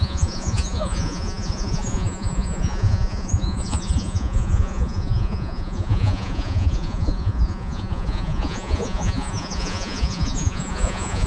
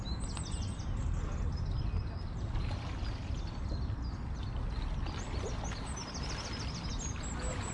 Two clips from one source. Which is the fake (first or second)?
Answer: first